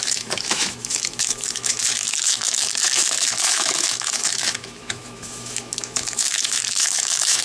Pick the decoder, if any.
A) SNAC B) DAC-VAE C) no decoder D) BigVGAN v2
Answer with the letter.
B